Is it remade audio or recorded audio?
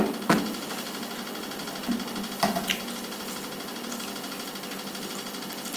recorded